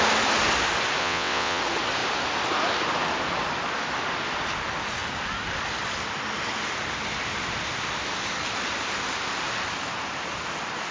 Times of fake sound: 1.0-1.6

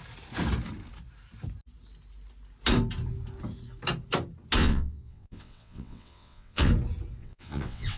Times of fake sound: 4.6-6.7; 7.2-8.0

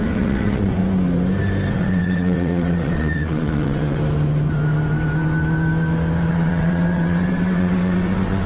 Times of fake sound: 0.0-0.8; 1.7-4.0; 6.3-8.5

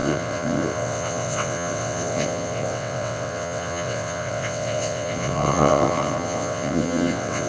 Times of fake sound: 0.0-7.5

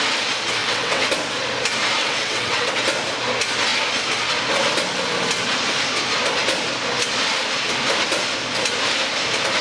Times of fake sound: 0.6-1.1; 2.0-2.7

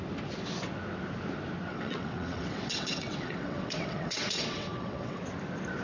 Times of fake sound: 1.7-5.2